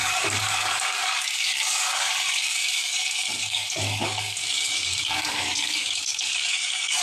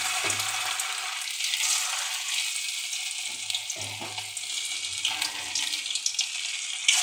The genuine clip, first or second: second